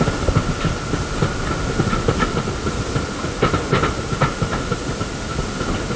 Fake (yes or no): no